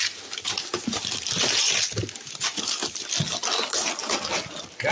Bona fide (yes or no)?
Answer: yes